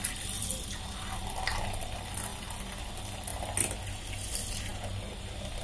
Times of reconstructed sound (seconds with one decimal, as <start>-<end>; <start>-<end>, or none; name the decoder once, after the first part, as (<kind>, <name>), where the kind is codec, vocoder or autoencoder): 1.2-1.8 (vocoder, BigVGAN v2); 2.3-2.8; 4.7-5.6